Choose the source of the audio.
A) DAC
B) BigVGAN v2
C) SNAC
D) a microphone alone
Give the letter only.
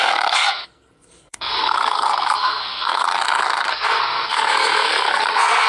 C